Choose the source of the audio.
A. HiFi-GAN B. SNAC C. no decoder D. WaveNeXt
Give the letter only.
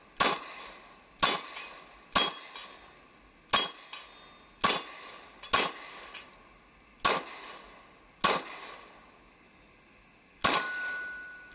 C